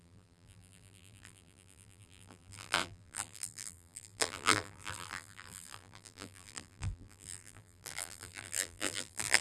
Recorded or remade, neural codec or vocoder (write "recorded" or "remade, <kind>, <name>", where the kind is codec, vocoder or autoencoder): remade, vocoder, BigVGAN v2